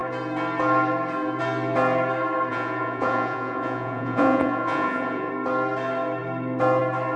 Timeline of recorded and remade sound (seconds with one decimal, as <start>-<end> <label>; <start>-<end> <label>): 0.0-2.5 recorded; 2.5-5.3 remade; 5.3-7.2 recorded